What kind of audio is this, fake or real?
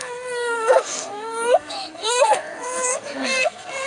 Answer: fake